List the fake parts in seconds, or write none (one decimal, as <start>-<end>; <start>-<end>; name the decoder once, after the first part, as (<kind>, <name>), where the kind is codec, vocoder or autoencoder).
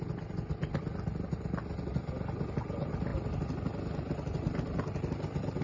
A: none